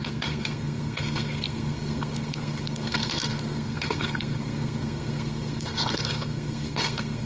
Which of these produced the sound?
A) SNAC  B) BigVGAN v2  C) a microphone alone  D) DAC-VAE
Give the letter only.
A